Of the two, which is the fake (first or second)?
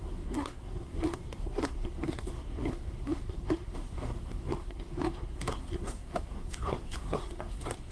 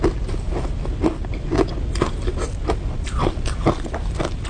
first